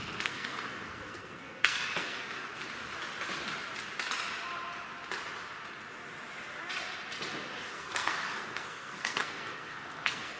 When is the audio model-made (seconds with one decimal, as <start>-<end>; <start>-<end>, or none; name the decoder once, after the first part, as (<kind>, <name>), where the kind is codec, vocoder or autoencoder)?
0.0-2.6 (codec, SNAC); 7.7-10.4